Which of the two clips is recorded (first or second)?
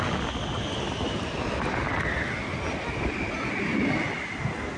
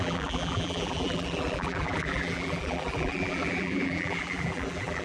first